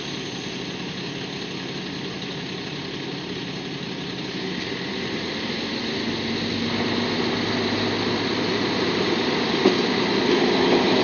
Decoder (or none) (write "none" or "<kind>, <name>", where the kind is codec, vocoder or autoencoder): none